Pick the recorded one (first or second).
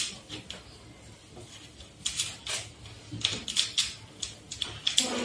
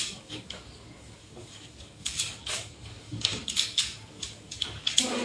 first